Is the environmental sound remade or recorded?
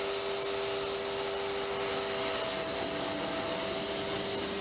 recorded